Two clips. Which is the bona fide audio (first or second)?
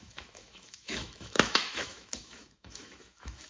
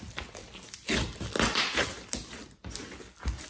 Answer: second